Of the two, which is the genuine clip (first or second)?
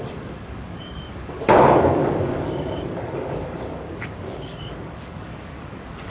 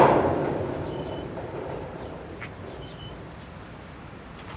second